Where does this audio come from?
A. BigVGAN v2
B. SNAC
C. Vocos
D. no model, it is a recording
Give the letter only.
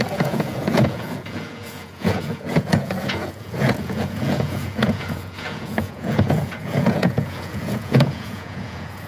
C